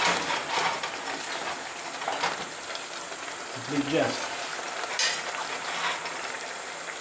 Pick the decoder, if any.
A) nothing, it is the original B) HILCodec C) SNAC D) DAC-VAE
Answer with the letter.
A